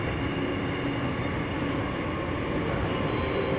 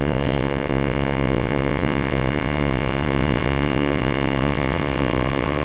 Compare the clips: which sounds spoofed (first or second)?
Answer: second